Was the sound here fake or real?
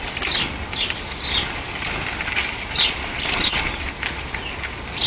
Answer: real